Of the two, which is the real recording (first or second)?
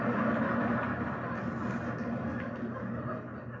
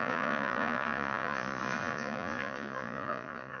first